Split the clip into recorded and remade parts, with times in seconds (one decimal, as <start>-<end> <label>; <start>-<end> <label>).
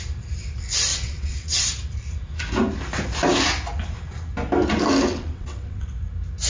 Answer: 0.0-0.9 recorded; 0.9-1.6 remade; 1.6-5.1 recorded; 5.1-5.9 remade; 5.9-6.5 recorded